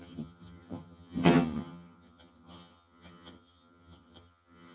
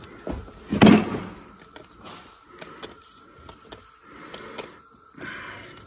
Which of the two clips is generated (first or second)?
first